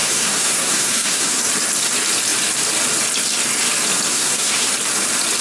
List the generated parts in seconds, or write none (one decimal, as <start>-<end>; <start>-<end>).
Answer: 0.0-1.4; 4.1-4.7